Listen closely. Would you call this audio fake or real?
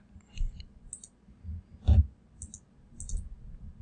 real